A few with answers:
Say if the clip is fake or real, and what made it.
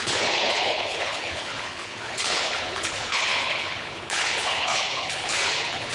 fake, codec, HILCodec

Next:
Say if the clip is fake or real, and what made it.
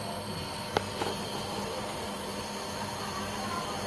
real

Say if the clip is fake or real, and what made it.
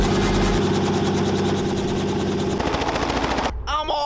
real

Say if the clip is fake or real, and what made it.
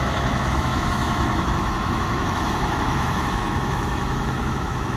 fake, autoencoder, DAC-VAE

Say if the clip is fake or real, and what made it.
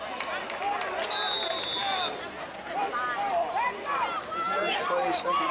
real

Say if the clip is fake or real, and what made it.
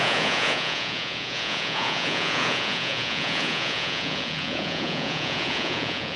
fake, vocoder, Vocos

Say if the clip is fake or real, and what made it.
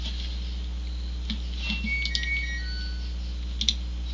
real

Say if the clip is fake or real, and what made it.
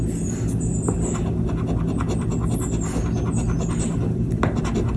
real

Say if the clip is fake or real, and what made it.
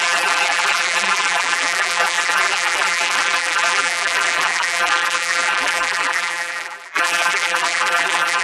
fake, vocoder, BigVGAN v2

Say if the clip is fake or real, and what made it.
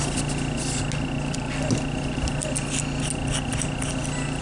real